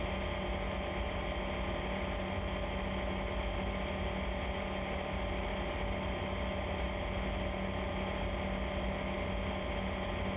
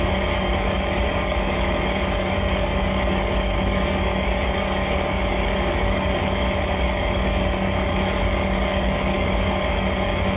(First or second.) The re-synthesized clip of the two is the second